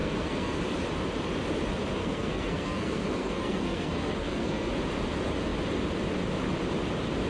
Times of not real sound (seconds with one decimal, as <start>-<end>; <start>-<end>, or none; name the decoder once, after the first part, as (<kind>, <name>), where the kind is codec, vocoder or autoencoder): 0.0-0.6 (codec, SNAC); 2.0-4.7